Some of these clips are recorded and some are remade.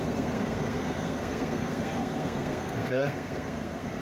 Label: remade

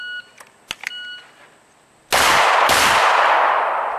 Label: recorded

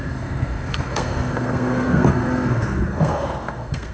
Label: remade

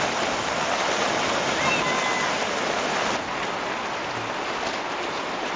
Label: recorded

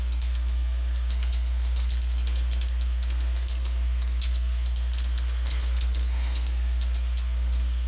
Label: remade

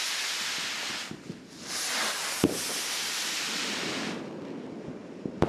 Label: recorded